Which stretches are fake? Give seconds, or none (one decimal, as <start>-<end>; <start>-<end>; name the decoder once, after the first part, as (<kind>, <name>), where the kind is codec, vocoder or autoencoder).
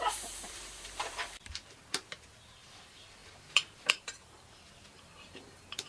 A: 0.0-5.9 (vocoder, BigVGAN v2)